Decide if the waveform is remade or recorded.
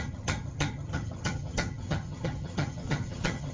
remade